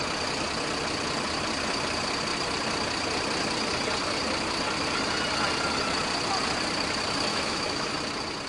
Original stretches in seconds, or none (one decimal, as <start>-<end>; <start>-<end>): 0.0-7.3; 7.9-8.5